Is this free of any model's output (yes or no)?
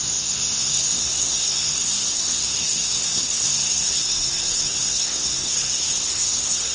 no